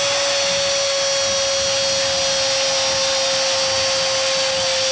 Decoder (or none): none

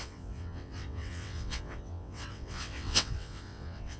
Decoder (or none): vocoder, WaveNeXt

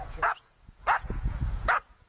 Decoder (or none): vocoder, Vocos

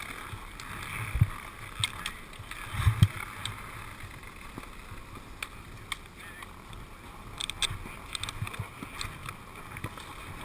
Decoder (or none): none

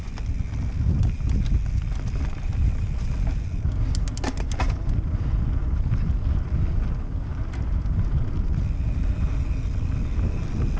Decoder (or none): none